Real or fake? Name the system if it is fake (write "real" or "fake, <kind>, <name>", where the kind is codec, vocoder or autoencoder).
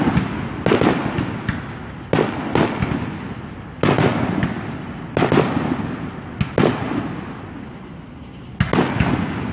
real